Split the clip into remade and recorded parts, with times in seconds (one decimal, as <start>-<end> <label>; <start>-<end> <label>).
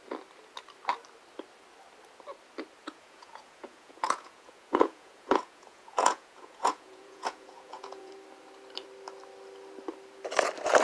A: 0.0-2.8 recorded; 2.8-8.1 remade; 8.1-10.8 recorded